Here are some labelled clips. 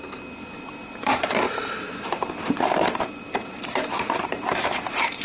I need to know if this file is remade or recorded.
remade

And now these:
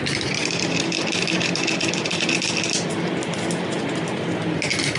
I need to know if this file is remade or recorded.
recorded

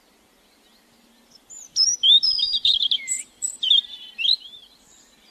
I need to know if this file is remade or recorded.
remade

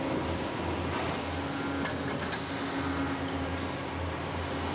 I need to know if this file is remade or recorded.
recorded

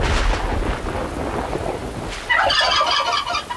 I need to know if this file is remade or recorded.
recorded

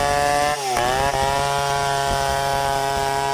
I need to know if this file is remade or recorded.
recorded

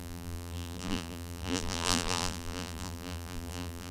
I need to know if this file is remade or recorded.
remade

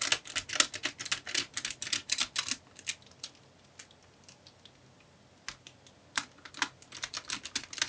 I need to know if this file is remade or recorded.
recorded